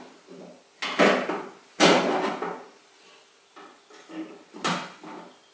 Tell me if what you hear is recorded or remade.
recorded